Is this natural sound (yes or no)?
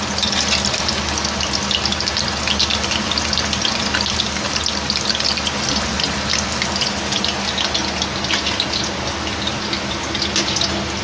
yes